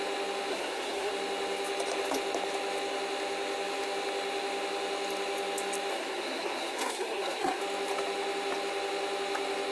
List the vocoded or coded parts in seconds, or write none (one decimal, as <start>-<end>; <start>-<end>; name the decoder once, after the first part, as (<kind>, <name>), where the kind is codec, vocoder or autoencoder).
0.5-1.1 (codec, SNAC); 5.9-7.6

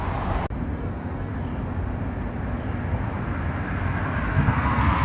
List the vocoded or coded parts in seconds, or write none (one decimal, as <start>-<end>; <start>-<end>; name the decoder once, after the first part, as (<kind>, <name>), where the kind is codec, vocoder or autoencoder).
0.8-1.3 (codec, SNAC); 4.3-5.0

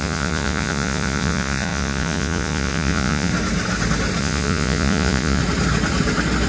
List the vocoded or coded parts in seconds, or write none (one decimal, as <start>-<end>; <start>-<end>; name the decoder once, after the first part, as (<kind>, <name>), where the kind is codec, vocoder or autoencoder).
0.0-3.3 (vocoder, Vocos); 4.2-5.4

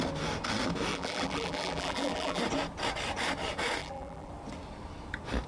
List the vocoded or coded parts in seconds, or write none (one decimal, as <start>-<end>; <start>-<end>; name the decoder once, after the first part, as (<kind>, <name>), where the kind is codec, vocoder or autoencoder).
0.9-2.4 (vocoder, BigVGAN v2); 3.8-4.3

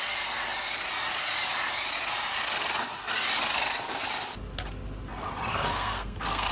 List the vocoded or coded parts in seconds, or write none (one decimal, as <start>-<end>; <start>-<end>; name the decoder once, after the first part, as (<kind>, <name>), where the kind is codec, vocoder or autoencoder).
5.5-6.5 (codec, SNAC)